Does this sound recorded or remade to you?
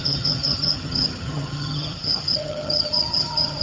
remade